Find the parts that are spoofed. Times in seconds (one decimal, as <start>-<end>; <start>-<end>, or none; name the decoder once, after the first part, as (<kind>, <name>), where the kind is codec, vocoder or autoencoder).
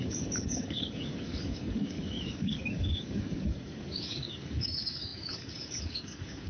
0.0-6.5 (codec, DAC)